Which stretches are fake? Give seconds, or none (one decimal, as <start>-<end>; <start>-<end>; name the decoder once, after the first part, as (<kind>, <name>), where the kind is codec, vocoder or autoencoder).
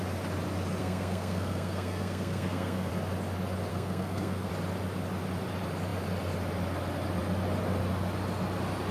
0.8-2.9 (codec, SNAC); 3.7-4.5